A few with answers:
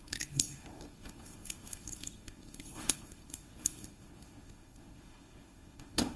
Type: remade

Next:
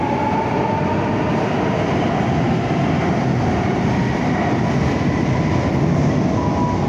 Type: recorded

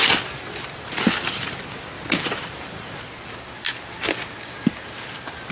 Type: recorded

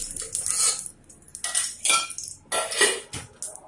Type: recorded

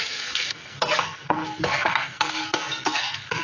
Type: remade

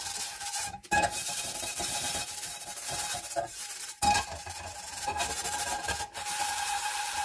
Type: remade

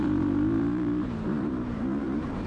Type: remade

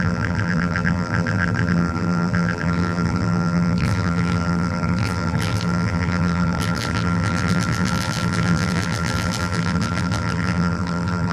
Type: remade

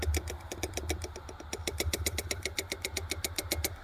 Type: recorded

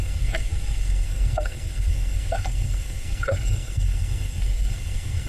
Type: remade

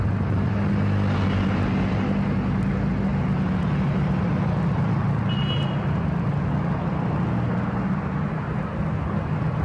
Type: recorded